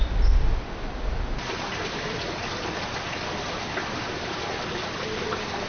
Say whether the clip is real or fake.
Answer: real